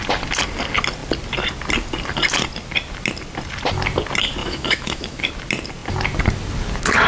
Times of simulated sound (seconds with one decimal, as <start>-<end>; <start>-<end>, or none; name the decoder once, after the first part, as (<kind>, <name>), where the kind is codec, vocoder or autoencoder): 4.4-5.3 (autoencoder, DAC-VAE)